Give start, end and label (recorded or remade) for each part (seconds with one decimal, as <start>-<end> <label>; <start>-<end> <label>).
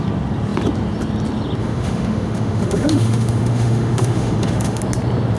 0.0-1.6 recorded; 1.6-4.8 remade; 4.8-5.4 recorded